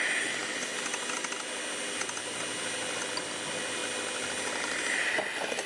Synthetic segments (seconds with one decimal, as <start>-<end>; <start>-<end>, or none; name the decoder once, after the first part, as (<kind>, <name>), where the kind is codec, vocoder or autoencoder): none